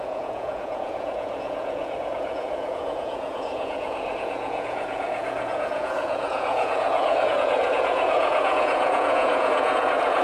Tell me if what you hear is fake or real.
fake